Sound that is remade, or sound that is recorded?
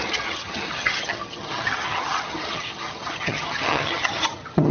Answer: remade